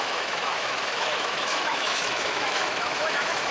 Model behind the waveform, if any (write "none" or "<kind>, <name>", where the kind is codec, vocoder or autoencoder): autoencoder, DAC-VAE